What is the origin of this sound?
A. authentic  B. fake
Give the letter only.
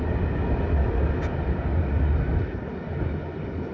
A